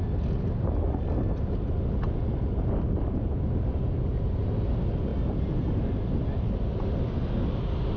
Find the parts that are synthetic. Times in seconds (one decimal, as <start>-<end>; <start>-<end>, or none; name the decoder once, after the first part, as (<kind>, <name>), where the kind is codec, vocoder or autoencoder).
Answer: none